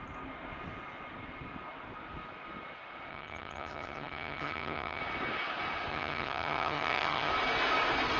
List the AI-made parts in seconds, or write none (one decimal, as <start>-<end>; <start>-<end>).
3.1-5.0; 5.9-7.3